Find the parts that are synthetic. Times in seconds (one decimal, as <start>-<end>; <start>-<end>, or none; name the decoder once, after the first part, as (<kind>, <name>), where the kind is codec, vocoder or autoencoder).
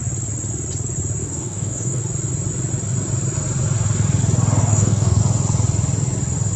1.2-2.0 (codec, DAC); 4.6-5.2